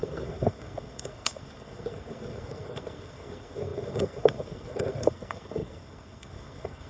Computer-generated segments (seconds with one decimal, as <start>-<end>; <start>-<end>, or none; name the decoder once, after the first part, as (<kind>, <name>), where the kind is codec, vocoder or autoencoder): 0.0-6.9 (codec, SNAC)

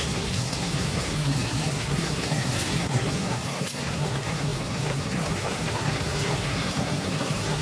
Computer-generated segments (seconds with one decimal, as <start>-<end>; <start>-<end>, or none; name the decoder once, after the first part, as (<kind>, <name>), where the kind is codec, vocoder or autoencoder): 0.0-7.6 (codec, SNAC)